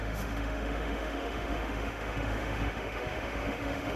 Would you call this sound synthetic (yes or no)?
yes